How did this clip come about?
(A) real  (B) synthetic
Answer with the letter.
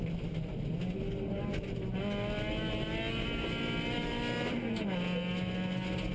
A